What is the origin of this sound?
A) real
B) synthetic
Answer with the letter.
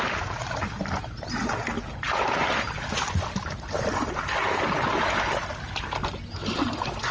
A